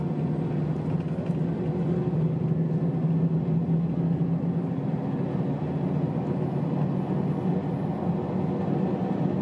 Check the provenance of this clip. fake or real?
real